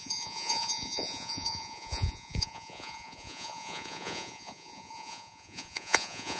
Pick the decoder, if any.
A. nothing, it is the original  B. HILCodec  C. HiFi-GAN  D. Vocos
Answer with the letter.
D